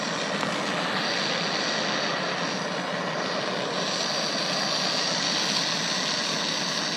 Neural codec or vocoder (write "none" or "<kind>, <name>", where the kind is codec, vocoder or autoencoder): none